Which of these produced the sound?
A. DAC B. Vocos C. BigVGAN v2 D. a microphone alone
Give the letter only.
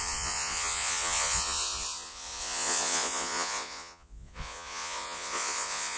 B